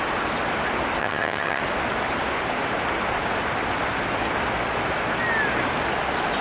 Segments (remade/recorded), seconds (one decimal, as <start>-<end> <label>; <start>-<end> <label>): 0.0-1.0 recorded; 1.0-1.6 remade; 1.6-6.4 recorded

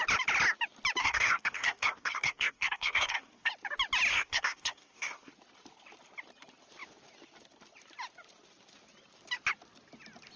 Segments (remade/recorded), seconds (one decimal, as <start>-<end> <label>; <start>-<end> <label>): 0.0-1.0 recorded; 1.0-3.5 remade; 3.5-4.1 recorded; 4.1-5.3 remade; 5.3-10.4 recorded

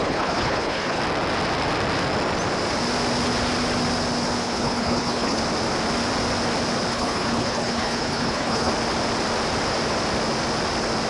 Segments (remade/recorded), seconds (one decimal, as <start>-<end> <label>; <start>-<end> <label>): 0.0-1.0 remade; 1.0-4.4 recorded; 4.4-5.4 remade; 5.4-6.9 recorded; 6.9-8.7 remade; 8.7-11.1 recorded